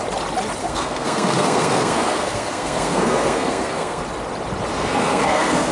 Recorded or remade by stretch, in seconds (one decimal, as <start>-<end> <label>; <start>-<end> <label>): 0.0-0.6 recorded; 0.6-4.0 remade; 4.0-4.7 recorded; 4.7-5.7 remade